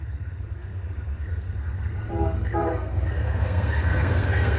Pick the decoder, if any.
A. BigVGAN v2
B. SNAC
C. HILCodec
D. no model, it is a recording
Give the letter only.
B